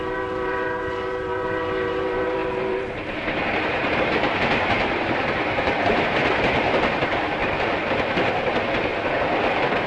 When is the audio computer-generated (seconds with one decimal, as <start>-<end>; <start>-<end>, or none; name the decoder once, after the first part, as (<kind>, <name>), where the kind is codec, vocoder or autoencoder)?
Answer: 0.0-7.4 (vocoder, BigVGAN v2); 8.0-8.9